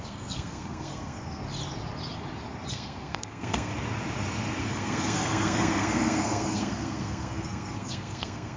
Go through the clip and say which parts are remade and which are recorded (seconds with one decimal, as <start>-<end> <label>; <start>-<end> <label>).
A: 0.0-1.4 remade; 1.4-2.7 recorded; 2.7-3.7 remade; 3.7-4.6 recorded; 4.6-8.6 remade